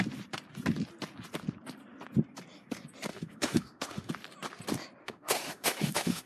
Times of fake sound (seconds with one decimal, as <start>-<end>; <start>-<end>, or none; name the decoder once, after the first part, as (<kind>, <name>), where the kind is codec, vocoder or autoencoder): 3.1-4.1 (autoencoder, DAC-VAE); 5.0-6.3